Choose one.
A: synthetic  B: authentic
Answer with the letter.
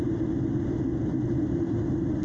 A